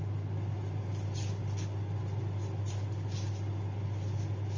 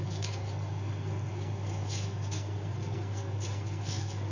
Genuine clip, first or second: first